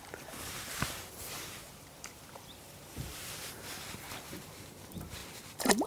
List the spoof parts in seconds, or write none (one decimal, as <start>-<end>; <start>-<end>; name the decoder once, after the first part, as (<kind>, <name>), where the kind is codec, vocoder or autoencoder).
0.0-5.2 (vocoder, BigVGAN v2)